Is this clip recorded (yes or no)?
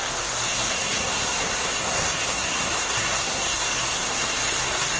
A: no